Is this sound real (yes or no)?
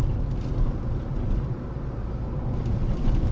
yes